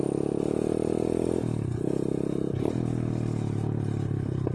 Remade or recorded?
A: recorded